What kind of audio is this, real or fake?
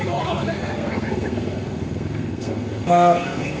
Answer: fake